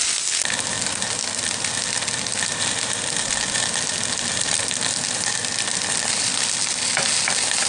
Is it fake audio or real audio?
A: real